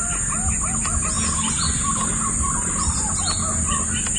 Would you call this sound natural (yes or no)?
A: yes